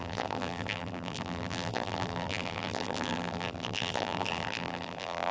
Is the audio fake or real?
fake